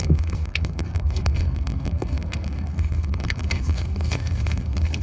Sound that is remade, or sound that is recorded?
remade